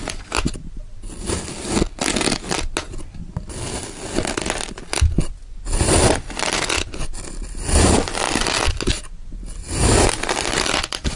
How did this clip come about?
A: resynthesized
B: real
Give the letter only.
B